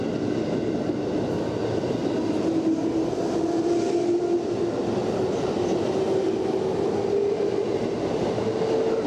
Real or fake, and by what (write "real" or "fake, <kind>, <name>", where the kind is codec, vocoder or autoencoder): real